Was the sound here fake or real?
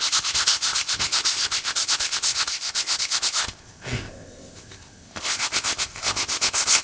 fake